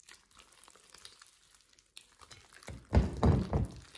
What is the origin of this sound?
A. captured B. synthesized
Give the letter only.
A